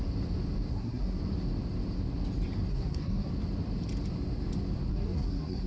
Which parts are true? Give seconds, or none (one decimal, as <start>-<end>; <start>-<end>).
0.0-0.7; 1.2-2.7; 3.3-4.9